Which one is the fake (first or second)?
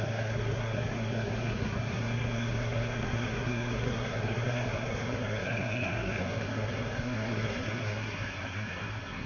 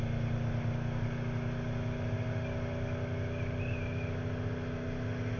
first